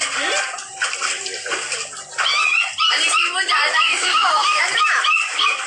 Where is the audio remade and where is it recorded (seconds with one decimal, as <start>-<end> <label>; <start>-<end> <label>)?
0.0-3.8 recorded; 3.8-4.6 remade; 4.6-5.7 recorded